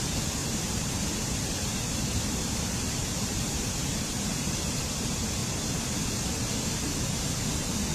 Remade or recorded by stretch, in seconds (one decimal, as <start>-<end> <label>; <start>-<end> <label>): 0.0-0.4 recorded; 0.4-4.7 remade; 4.7-7.9 recorded

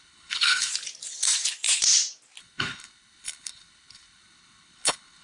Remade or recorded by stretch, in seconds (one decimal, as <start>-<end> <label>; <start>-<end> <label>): 0.0-0.7 remade; 0.7-2.4 recorded; 2.4-5.2 remade

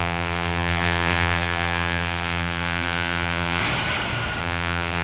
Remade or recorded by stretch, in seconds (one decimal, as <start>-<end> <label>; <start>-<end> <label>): 0.0-3.6 remade; 3.6-4.4 recorded; 4.4-5.0 remade

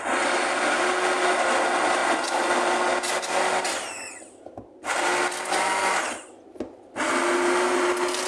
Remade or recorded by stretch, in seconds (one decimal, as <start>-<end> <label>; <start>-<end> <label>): 0.0-8.3 recorded

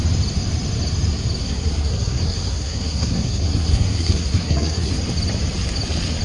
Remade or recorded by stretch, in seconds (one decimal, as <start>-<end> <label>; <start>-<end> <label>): 0.0-1.4 recorded; 1.4-4.9 remade; 4.9-6.2 recorded

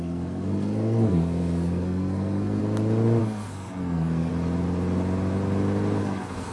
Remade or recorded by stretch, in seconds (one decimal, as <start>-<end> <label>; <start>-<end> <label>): 0.0-2.6 remade; 2.6-3.2 recorded; 3.2-4.3 remade; 4.3-6.0 recorded; 6.0-6.5 remade

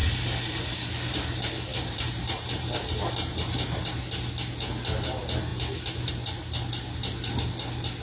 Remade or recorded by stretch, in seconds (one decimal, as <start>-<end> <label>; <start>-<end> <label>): 0.0-1.7 recorded; 1.7-3.3 remade; 3.3-8.0 recorded

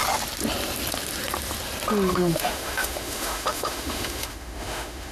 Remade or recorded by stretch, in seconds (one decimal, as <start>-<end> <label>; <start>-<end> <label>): 0.0-2.1 recorded; 2.1-5.1 remade